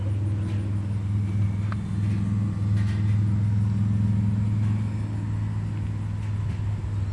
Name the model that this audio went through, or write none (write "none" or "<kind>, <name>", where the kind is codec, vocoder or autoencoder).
none